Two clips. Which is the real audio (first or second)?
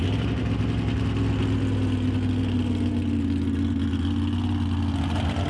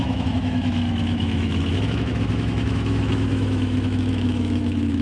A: first